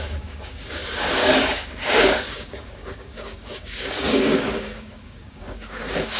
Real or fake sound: fake